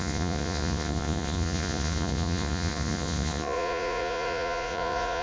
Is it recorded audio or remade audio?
remade